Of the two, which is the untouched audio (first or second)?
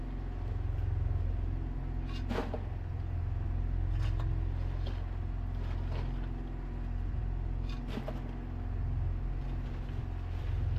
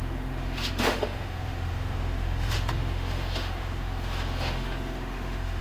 first